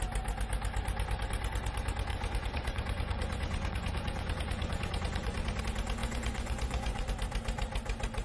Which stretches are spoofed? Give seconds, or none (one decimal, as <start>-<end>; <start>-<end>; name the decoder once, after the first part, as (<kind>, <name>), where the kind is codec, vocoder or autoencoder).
2.1-5.6 (vocoder, Vocos); 6.0-7.1